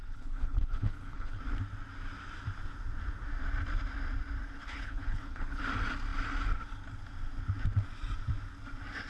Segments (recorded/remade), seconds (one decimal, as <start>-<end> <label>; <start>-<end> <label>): 0.0-1.4 remade; 1.4-4.6 recorded; 4.6-5.6 remade; 5.6-9.1 recorded